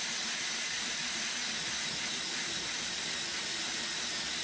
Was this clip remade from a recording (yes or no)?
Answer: no